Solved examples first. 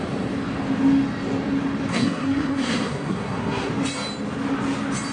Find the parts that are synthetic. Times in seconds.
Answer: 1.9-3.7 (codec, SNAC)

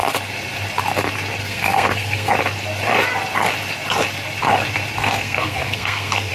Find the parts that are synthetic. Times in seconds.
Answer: 1.4-2.3 (codec, SNAC); 5.0-6.3

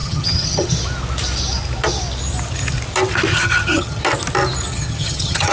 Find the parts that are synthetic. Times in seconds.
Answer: 0.0-0.7 (vocoder, HiFi-GAN); 3.3-4.0; 4.7-5.5

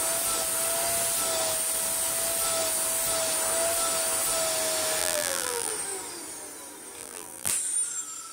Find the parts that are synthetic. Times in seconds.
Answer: 5.0-5.7 (vocoder, BigVGAN v2); 7.0-7.5